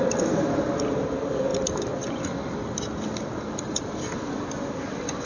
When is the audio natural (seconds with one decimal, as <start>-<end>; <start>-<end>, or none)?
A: 0.0-5.3